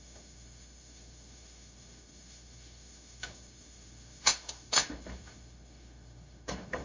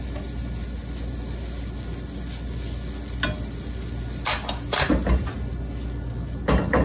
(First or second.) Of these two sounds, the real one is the second